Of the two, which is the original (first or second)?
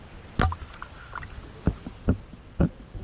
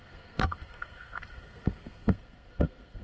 first